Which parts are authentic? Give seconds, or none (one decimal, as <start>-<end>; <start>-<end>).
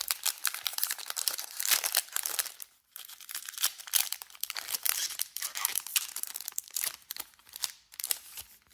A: 5.9-6.5